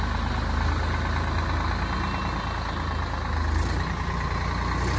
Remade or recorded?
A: recorded